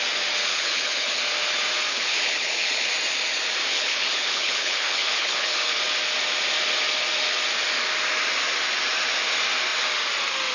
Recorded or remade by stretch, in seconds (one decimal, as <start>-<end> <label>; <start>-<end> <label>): 0.0-0.5 recorded; 0.5-1.2 remade; 1.2-1.9 recorded; 1.9-2.9 remade; 2.9-3.7 recorded; 3.7-5.8 remade; 5.8-10.5 recorded